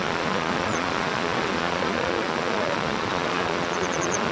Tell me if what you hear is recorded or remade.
remade